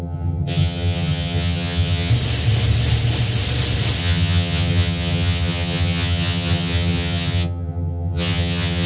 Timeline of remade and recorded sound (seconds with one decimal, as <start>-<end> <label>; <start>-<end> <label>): 0.0-2.1 remade; 2.1-4.0 recorded; 4.0-8.9 remade